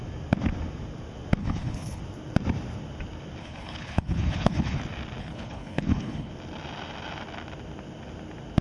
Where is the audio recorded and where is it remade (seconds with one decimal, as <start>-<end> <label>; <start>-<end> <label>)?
0.0-1.4 recorded; 1.4-2.0 remade; 2.0-3.4 recorded; 3.4-4.8 remade; 4.8-5.2 recorded; 5.2-6.3 remade; 6.3-8.6 recorded